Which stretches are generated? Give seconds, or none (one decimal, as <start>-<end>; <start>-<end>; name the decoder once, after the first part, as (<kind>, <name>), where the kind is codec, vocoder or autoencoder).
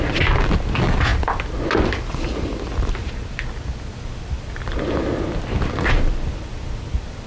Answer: 0.0-1.1 (vocoder, BigVGAN v2); 2.4-7.3